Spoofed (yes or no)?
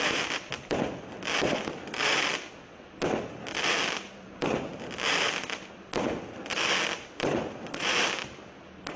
no